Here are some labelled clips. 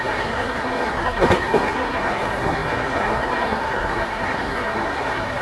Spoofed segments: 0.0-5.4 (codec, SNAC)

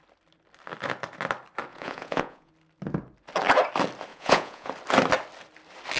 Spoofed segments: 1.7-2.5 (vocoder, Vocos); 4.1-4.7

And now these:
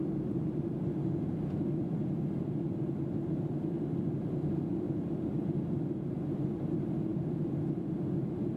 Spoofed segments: none

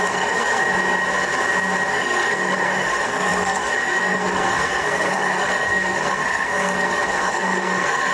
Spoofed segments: 0.0-0.6 (codec, SNAC); 1.9-8.1

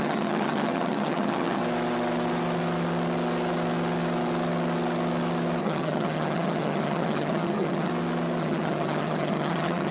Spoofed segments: 0.0-1.6 (vocoder, HiFi-GAN); 5.6-7.9; 8.4-9.9